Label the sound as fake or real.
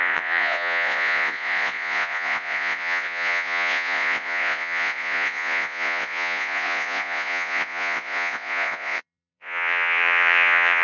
fake